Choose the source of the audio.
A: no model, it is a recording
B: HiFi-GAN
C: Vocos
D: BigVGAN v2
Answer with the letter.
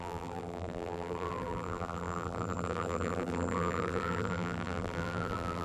D